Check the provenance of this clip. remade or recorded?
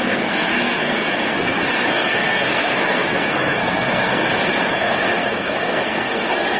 remade